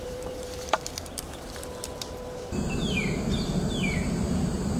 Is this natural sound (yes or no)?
no